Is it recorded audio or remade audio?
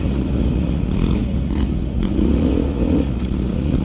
remade